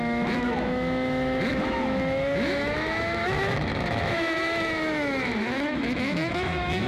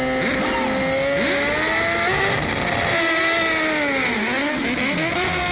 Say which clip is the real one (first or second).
second